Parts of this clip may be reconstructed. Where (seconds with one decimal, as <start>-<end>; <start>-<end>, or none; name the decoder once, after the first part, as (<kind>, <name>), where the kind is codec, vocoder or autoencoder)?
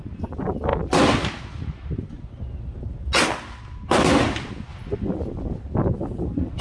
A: none